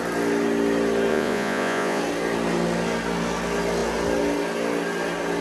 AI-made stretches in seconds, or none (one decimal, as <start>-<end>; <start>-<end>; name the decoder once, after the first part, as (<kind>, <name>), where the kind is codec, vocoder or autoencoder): 1.1-2.0 (vocoder, Vocos)